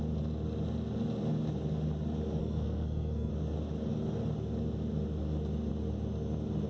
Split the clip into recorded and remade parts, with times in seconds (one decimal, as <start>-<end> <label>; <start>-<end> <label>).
0.0-2.4 recorded; 2.4-3.3 remade; 3.3-6.7 recorded